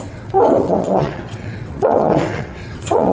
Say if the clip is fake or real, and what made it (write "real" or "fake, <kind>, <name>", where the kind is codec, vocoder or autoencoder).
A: fake, vocoder, WaveNeXt